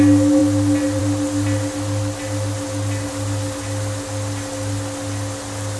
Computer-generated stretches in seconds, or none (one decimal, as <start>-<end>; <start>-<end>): none